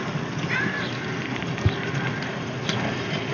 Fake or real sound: real